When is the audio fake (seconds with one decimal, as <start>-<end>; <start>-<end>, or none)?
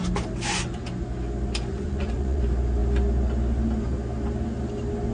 1.7-2.4